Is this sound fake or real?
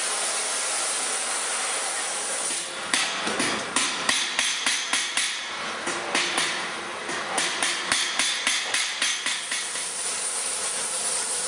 fake